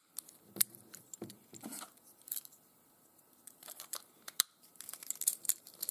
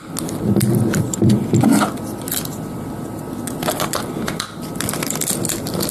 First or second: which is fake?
first